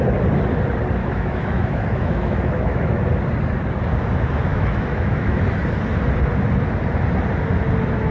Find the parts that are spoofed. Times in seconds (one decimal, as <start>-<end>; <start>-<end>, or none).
1.0-3.1; 4.5-5.4